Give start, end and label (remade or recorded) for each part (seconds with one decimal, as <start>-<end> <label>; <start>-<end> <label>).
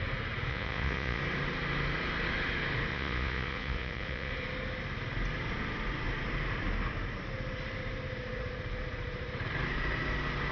0.0-0.5 recorded; 0.5-1.2 remade; 1.2-2.9 recorded; 2.9-4.3 remade; 4.3-10.5 recorded